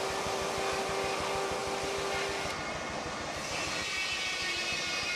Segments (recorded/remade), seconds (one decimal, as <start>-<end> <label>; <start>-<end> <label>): 0.0-5.2 recorded